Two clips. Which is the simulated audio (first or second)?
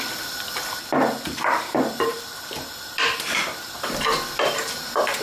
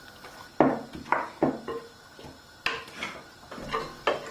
first